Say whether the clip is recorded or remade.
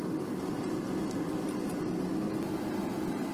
recorded